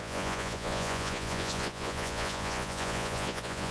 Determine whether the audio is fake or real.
fake